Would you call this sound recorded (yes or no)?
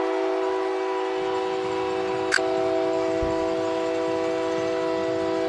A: yes